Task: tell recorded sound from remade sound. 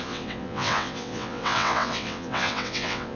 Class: remade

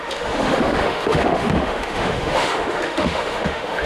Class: remade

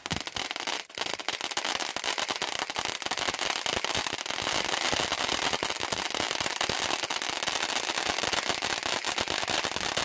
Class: recorded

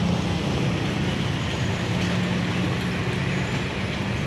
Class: recorded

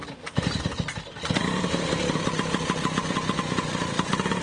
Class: recorded